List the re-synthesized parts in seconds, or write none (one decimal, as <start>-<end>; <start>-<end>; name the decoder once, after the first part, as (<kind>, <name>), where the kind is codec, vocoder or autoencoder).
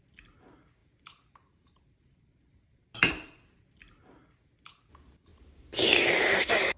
0.8-3.1 (vocoder, BigVGAN v2); 5.3-6.8